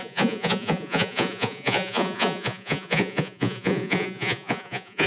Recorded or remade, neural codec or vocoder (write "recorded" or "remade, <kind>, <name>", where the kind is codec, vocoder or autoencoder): remade, vocoder, Vocos